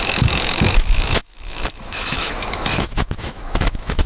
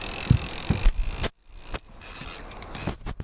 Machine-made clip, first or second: first